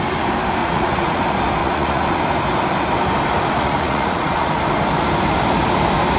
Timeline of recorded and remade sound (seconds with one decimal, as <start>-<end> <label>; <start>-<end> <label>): 0.0-0.6 recorded; 0.6-1.2 remade; 1.2-1.6 recorded; 1.6-2.2 remade; 2.2-3.5 recorded; 3.5-4.5 remade; 4.5-6.2 recorded